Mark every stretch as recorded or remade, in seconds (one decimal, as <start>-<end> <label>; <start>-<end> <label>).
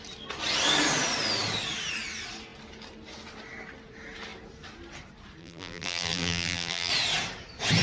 0.0-5.4 recorded; 5.4-6.9 remade; 6.9-7.8 recorded